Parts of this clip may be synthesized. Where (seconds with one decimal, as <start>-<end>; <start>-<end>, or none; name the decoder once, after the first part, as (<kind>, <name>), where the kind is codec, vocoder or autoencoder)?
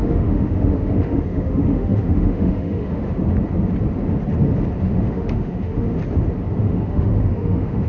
0.0-3.2 (autoencoder, DAC-VAE); 4.8-6.0; 6.6-7.9